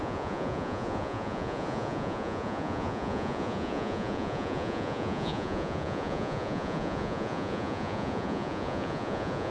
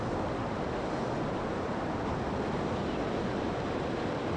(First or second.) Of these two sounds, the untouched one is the second